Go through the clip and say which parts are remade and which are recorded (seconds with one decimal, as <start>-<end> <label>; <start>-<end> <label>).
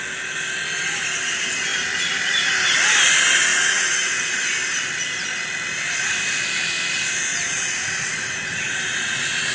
0.0-7.3 recorded; 7.3-8.6 remade; 8.6-9.5 recorded